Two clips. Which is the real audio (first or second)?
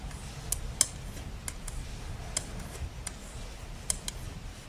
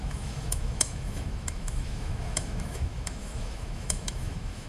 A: first